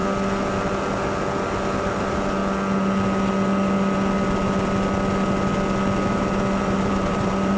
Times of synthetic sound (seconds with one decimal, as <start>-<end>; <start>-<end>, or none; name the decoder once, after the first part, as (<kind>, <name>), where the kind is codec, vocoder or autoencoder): 1.9-2.4 (vocoder, BigVGAN v2); 6.6-7.6